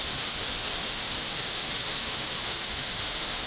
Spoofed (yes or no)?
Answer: yes